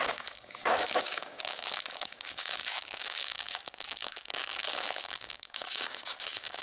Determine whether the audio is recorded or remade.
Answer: remade